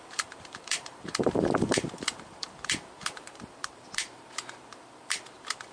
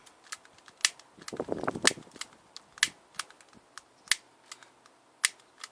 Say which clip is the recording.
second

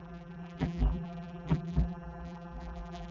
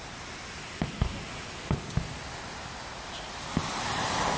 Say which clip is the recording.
second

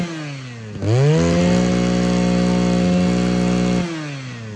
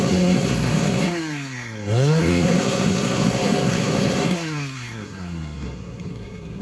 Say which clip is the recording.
first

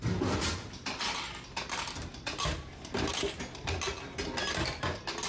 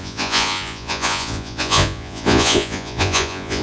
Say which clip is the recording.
first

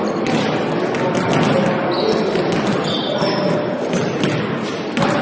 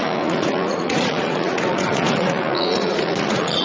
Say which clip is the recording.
first